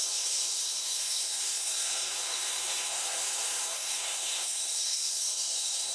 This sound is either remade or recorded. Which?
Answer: remade